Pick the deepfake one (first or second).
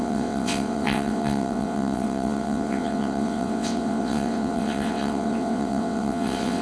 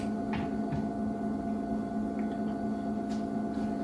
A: first